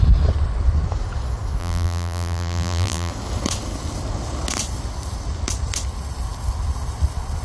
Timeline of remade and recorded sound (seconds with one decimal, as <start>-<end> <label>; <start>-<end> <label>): 0.0-1.6 recorded; 1.6-3.1 remade; 3.1-7.4 recorded